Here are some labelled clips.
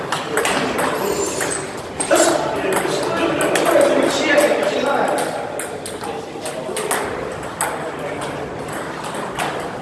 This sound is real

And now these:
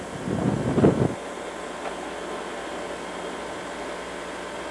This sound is real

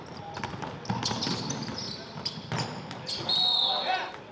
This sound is real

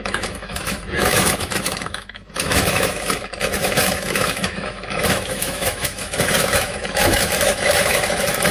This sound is fake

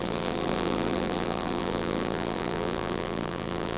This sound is fake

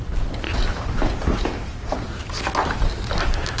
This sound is real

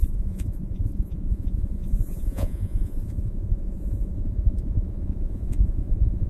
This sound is fake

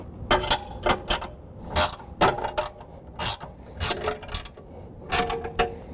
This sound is real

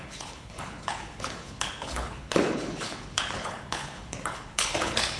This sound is fake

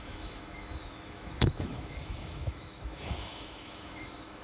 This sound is fake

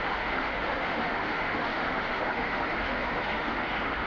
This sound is fake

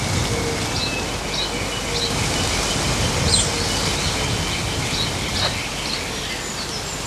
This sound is real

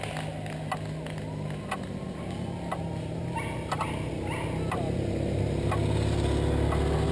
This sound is real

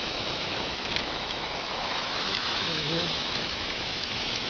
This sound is fake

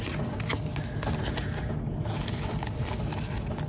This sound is real